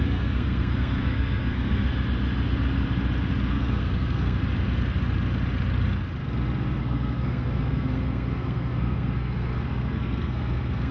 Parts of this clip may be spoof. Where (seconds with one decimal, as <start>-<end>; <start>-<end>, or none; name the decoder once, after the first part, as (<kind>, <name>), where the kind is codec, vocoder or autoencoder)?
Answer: 0.0-1.9 (codec, SNAC); 3.5-4.4; 6.8-10.9

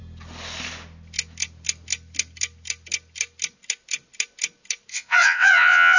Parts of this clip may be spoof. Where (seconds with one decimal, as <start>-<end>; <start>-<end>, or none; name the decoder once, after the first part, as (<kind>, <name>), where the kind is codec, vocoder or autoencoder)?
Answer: 4.9-6.0 (vocoder, WaveNeXt)

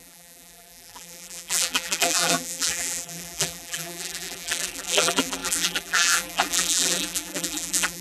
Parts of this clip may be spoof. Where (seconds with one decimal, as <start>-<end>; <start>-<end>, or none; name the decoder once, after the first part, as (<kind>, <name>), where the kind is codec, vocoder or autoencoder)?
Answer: 0.0-8.0 (vocoder, BigVGAN v2)

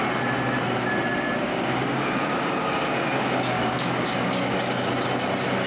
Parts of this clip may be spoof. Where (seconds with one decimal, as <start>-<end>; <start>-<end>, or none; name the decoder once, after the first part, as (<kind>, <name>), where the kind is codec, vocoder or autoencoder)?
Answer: 1.5-4.9 (codec, DAC)

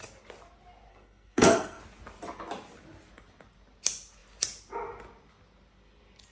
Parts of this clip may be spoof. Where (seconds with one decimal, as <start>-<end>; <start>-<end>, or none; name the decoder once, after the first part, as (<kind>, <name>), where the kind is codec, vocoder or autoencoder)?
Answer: 0.9-1.8 (codec, SNAC)

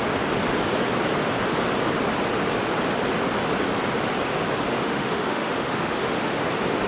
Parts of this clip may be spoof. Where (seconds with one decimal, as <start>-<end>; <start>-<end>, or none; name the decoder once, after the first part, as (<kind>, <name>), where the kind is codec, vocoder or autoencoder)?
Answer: 4.7-6.4 (autoencoder, DAC-VAE)